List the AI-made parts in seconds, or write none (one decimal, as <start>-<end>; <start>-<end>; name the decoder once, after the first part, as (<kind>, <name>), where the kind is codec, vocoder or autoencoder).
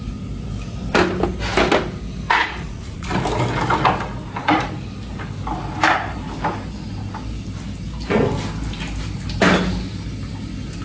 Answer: 2.4-3.2 (vocoder, Vocos)